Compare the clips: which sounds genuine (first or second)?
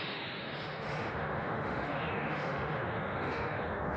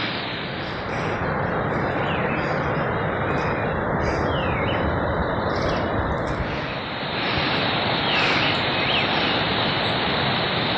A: second